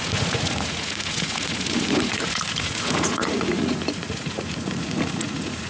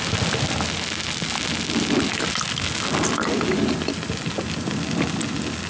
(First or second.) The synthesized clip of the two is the first